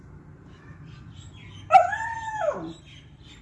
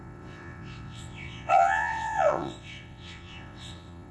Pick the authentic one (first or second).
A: first